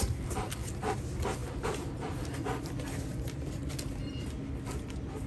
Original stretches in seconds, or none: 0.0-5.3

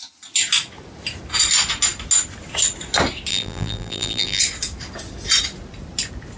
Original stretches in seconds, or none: 0.0-3.3; 4.4-6.4

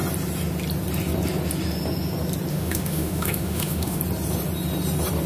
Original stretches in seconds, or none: 0.0-2.5; 4.0-5.3

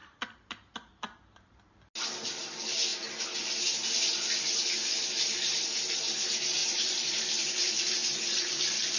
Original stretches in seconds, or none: 1.7-6.6; 7.2-8.0; 8.5-9.0